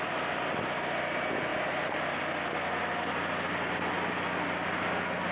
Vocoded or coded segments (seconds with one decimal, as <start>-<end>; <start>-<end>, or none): 1.5-2.2